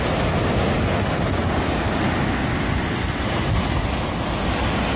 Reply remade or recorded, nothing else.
recorded